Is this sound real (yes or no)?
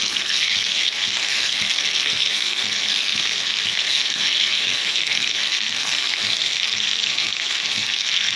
no